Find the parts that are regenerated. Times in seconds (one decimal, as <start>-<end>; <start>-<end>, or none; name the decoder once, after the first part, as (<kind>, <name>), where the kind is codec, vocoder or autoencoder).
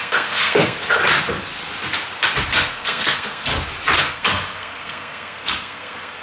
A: 0.0-1.0 (codec, SNAC); 2.5-3.5; 4.0-6.2